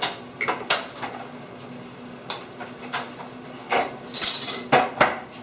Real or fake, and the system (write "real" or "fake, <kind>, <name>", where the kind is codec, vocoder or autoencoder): real